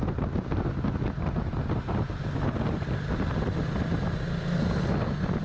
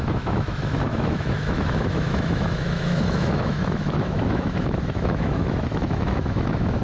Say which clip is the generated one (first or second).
second